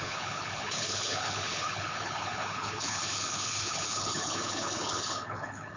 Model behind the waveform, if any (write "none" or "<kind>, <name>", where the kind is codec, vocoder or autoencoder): codec, HILCodec